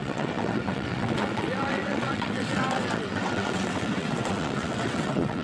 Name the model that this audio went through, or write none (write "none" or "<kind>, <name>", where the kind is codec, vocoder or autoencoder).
vocoder, WaveNeXt